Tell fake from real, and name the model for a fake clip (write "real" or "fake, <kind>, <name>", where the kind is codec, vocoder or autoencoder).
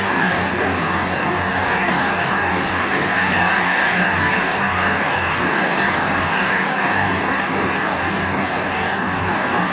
fake, codec, DAC